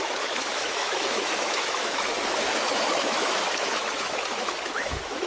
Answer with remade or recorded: remade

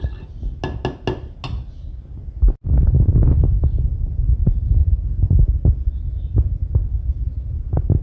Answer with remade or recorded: recorded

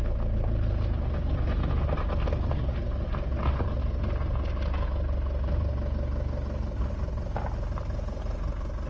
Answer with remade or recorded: recorded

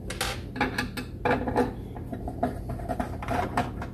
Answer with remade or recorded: recorded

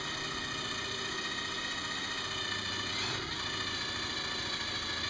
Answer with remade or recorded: recorded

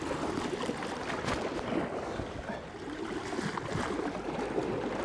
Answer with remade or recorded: recorded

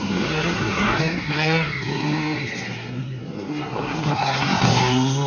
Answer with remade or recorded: remade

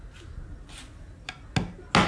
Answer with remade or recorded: recorded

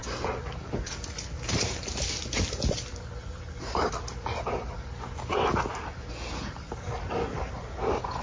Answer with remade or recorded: recorded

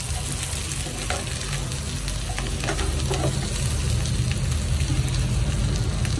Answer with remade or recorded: recorded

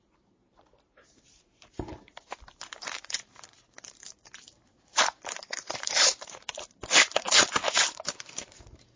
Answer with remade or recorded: remade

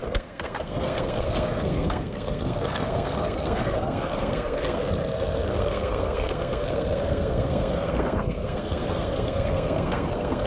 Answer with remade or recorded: remade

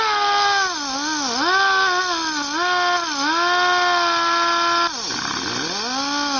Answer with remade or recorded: recorded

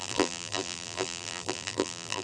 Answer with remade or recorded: remade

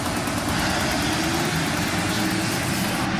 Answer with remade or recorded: recorded